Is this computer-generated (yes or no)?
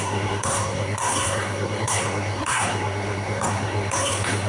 yes